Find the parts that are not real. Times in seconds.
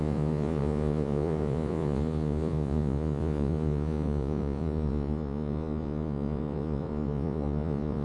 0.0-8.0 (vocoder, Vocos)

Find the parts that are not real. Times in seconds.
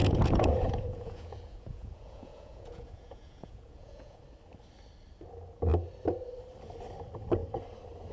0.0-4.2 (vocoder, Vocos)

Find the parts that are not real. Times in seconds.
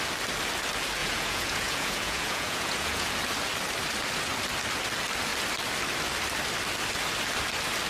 1.0-3.1 (vocoder, Vocos)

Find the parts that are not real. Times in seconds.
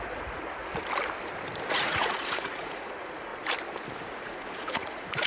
0.0-0.7 (vocoder, Vocos); 1.7-3.3; 4.1-5.3